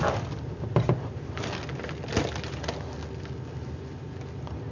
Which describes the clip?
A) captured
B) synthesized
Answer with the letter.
A